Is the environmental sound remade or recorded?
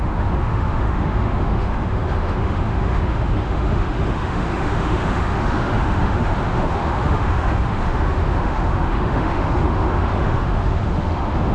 remade